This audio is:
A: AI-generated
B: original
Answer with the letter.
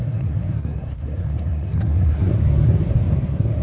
A